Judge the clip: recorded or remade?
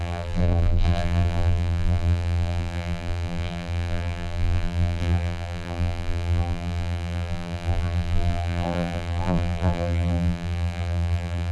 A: remade